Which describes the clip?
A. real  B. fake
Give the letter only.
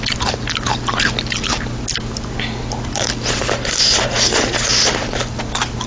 A